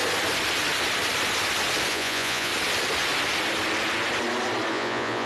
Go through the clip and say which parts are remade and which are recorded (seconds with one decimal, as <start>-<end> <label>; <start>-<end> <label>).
0.0-1.9 recorded; 1.9-2.5 remade; 2.5-4.7 recorded; 4.7-5.3 remade